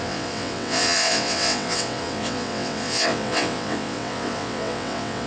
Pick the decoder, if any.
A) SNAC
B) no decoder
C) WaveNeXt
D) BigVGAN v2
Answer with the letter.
C